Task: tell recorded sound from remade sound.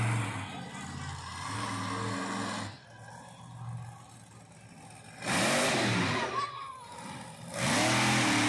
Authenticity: recorded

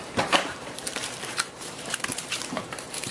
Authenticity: remade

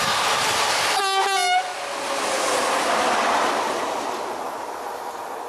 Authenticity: recorded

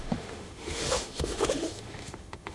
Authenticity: remade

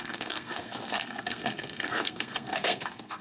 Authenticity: remade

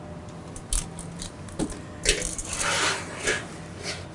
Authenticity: recorded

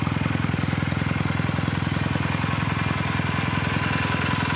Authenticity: recorded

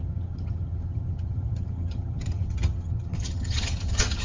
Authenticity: remade